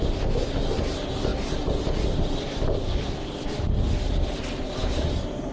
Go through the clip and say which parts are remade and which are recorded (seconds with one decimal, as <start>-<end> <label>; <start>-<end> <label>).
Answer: 0.0-5.5 recorded